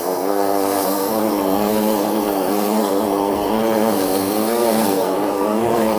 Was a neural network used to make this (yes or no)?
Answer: yes